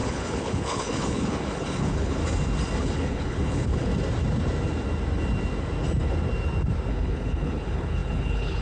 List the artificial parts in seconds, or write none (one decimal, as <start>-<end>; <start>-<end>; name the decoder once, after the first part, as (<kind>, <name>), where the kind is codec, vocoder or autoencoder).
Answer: 0.0-2.2 (codec, HILCodec); 2.8-3.9; 6.9-8.6